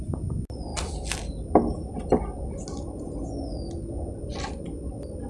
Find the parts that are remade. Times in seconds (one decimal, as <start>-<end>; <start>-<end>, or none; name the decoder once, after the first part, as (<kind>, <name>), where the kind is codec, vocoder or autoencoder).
none